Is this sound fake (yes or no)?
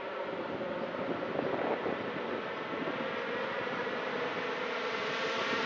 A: no